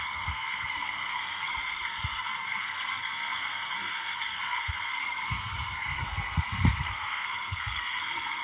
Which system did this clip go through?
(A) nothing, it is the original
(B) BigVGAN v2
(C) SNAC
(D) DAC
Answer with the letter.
C